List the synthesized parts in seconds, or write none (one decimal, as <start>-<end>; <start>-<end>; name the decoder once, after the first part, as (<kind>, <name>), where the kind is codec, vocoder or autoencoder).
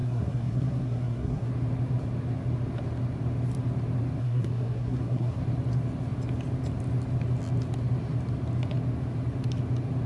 0.0-1.5 (codec, SNAC); 4.2-5.4